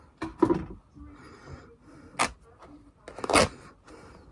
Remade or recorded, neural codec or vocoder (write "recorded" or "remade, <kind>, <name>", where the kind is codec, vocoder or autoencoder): recorded